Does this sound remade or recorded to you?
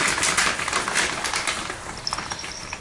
recorded